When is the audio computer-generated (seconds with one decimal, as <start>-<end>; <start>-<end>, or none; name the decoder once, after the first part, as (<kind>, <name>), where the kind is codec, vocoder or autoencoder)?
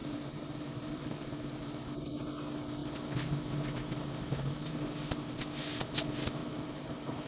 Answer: 0.0-2.1 (vocoder, BigVGAN v2); 6.4-7.3